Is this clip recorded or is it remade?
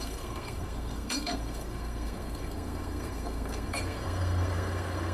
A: remade